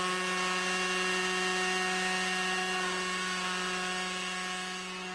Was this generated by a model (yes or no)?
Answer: no